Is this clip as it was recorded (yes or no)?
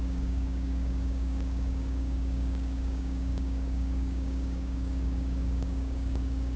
no